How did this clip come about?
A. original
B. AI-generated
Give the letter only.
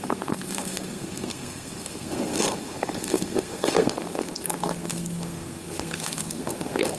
B